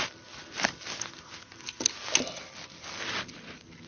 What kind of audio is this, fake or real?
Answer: real